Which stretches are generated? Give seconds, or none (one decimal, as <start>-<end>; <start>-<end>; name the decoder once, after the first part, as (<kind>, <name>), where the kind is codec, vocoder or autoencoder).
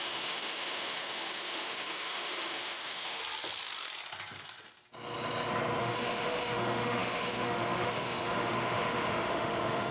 0.0-3.2 (autoencoder, DAC-VAE); 5.8-9.9